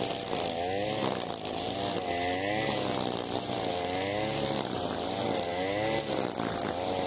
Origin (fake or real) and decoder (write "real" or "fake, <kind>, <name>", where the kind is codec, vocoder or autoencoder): real